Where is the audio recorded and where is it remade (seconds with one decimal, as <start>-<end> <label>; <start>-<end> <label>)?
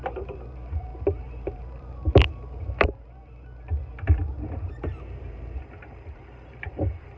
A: 0.0-7.2 remade